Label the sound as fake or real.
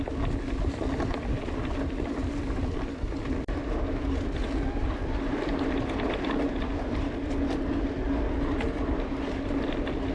real